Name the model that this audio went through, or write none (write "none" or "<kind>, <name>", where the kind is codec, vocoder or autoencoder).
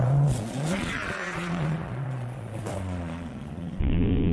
vocoder, Vocos